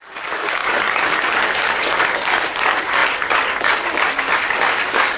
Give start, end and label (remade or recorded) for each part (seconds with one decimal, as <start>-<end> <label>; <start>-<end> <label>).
0.0-5.2 remade